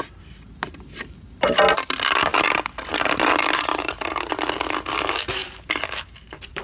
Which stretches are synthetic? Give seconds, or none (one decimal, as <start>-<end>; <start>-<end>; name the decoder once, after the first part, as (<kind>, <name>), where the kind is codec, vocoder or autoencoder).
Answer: 3.7-4.3 (vocoder, BigVGAN v2); 5.4-6.6